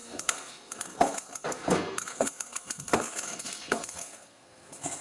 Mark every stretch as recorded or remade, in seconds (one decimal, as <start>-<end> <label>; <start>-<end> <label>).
0.0-5.0 remade